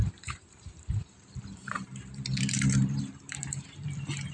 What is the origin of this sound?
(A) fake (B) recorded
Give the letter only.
A